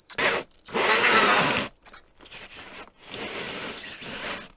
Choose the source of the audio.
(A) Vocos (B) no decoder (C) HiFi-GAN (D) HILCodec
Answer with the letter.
B